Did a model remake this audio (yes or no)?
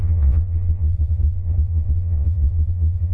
yes